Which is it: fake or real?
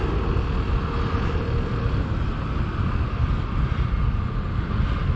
real